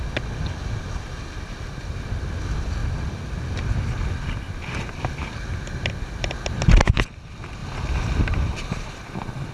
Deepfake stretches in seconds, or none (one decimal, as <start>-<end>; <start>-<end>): none